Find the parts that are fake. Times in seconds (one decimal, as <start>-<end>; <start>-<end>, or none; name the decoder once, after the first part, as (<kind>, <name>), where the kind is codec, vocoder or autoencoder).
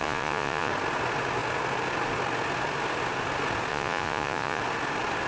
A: 0.0-0.7 (vocoder, Vocos); 3.7-4.6